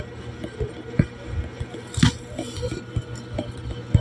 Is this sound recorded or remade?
recorded